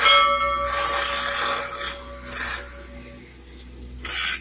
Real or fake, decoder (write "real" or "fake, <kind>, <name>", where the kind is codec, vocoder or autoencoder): real